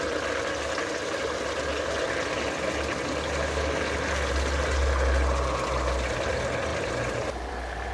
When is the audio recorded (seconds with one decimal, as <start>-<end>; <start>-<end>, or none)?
0.0-7.9